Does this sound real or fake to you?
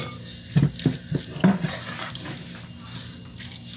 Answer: real